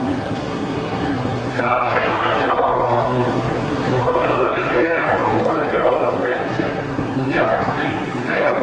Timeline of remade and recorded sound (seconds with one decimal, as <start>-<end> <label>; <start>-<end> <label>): 0.0-8.6 remade